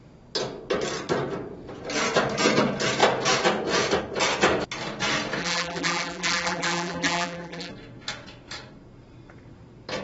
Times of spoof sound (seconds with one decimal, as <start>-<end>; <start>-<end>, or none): 5.4-7.7